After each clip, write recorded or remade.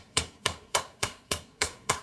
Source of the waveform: remade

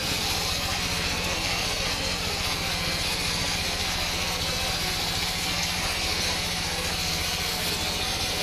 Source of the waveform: remade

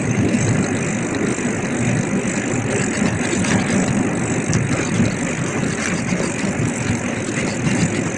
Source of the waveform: recorded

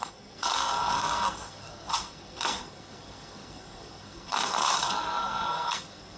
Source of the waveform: remade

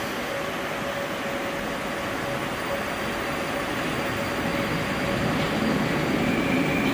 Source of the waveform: recorded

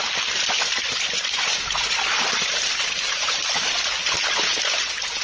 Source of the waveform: recorded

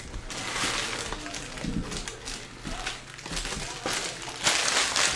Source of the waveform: recorded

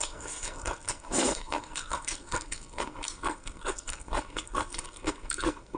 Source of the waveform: remade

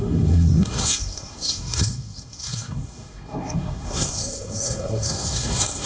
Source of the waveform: remade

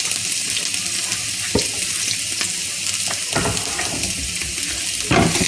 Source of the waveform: recorded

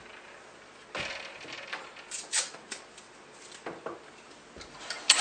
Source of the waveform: recorded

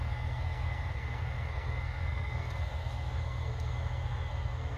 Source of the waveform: remade